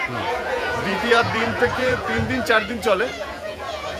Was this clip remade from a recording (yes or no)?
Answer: yes